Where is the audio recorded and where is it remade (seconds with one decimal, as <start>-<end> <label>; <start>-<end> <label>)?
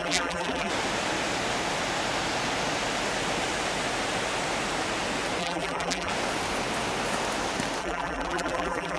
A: 0.0-0.7 remade; 0.7-5.4 recorded; 5.4-6.1 remade; 6.1-7.8 recorded; 7.8-9.0 remade